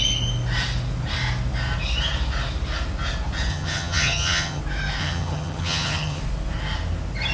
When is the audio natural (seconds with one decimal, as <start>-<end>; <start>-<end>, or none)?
0.0-3.5; 4.6-5.0; 6.2-7.3